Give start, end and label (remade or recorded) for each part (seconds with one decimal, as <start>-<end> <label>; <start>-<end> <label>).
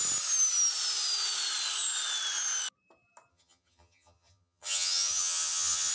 0.0-3.3 recorded; 3.3-5.9 remade